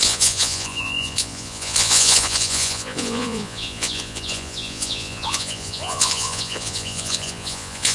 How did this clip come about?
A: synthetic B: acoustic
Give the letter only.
A